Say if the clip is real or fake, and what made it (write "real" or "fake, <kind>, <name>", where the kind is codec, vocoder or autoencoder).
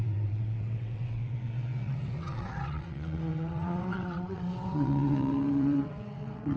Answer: fake, vocoder, WaveNeXt